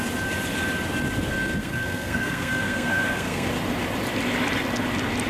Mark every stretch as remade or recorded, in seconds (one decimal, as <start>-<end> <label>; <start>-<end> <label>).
0.0-1.6 recorded; 1.6-3.5 remade; 3.5-5.3 recorded